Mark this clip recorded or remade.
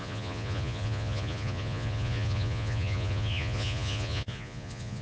remade